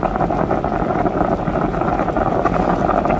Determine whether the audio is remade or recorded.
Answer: recorded